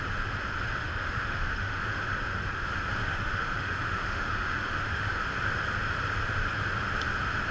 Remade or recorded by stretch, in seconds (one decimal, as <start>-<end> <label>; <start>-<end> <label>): 0.0-0.8 recorded; 0.8-2.0 remade; 2.0-3.0 recorded; 3.0-5.2 remade; 5.2-7.5 recorded